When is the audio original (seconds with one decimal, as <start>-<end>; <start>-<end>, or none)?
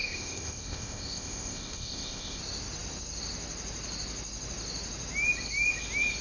2.4-6.2